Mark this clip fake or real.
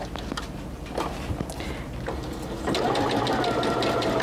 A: real